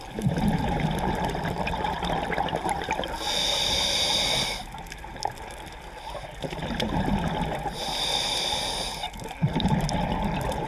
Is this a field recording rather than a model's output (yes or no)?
yes